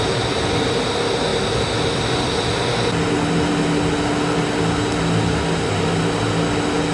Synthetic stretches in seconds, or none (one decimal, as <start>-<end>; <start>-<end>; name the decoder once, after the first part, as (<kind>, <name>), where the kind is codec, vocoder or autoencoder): none